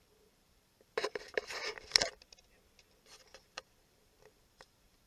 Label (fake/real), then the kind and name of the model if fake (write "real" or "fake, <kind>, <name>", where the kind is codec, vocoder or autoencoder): fake, vocoder, BigVGAN v2